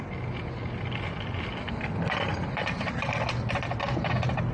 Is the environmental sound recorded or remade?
recorded